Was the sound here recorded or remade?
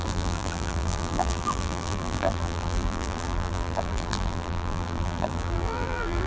remade